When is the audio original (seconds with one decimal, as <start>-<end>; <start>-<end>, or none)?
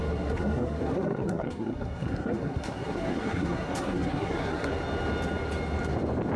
4.7-6.4